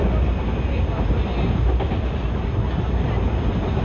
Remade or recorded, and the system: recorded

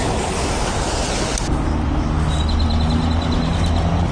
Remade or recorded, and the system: recorded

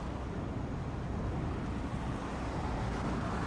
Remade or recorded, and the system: recorded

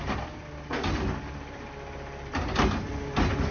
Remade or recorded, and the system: recorded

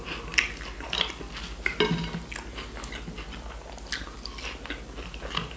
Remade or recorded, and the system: recorded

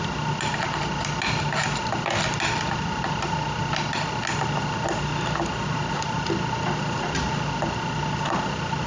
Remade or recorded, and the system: recorded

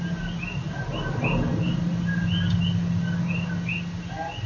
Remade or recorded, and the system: recorded